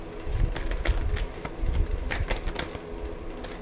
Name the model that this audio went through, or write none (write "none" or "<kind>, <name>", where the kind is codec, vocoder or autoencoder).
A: none